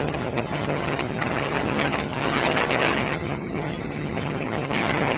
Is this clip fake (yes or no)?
yes